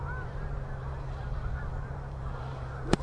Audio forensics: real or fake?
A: fake